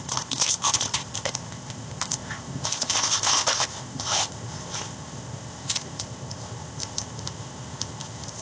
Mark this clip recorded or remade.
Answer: remade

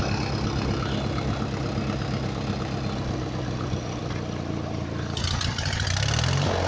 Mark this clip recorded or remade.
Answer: recorded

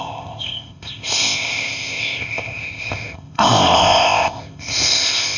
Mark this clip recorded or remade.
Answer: remade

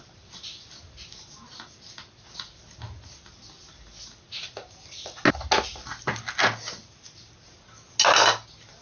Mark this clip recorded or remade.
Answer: recorded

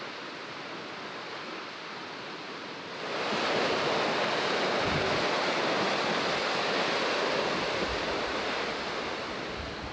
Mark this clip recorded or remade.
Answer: recorded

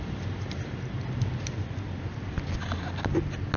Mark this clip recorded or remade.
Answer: recorded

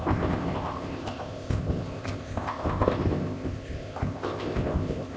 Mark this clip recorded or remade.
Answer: remade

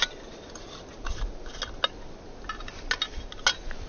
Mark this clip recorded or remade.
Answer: recorded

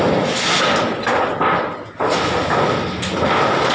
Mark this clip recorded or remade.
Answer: recorded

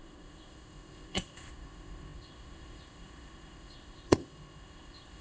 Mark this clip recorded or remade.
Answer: remade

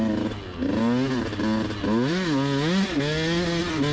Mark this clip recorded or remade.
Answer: recorded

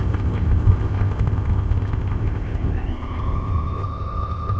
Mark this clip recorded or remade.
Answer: remade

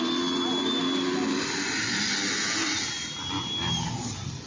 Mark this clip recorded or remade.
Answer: recorded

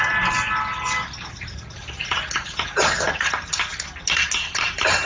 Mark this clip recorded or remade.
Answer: recorded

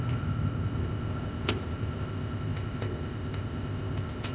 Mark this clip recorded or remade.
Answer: remade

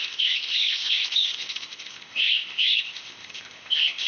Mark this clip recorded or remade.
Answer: remade